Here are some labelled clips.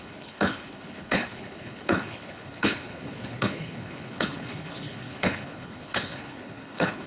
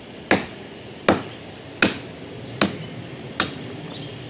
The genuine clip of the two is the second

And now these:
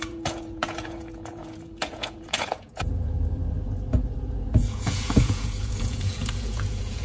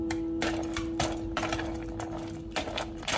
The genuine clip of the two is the second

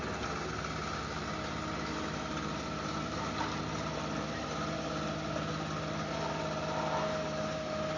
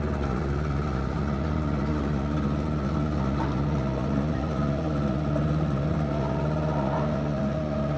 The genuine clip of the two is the first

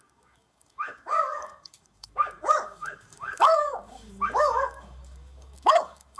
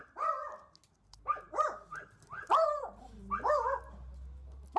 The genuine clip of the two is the second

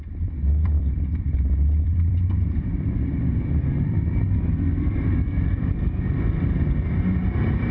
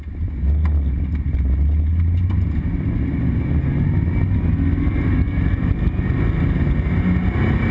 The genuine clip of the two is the second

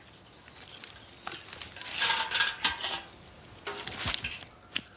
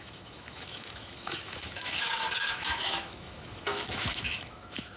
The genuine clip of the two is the first